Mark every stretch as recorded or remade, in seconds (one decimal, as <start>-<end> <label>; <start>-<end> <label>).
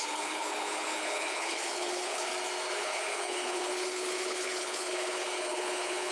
0.0-2.3 remade; 2.3-2.8 recorded; 2.8-6.1 remade